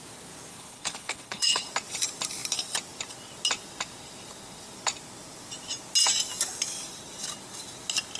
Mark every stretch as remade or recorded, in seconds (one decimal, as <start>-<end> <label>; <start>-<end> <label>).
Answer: 0.0-0.5 recorded; 0.5-1.7 remade; 1.7-8.2 recorded